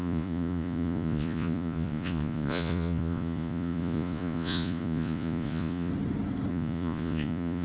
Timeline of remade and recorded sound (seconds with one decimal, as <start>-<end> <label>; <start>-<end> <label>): 0.0-5.9 remade; 5.9-6.5 recorded; 6.5-7.6 remade